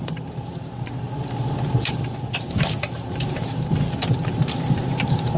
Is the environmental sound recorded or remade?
remade